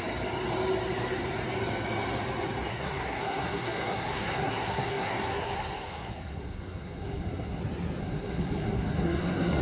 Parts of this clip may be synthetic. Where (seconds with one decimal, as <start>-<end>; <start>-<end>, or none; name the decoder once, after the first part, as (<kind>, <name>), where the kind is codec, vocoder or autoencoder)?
2.7-7.6 (codec, SNAC); 8.0-9.6